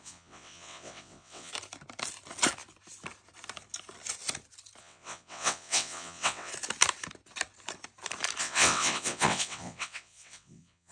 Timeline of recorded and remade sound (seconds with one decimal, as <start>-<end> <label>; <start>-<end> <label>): 0.0-1.5 remade; 1.5-4.8 recorded; 4.8-6.5 remade; 6.5-8.4 recorded; 8.4-10.9 remade